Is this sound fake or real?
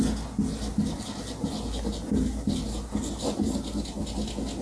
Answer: real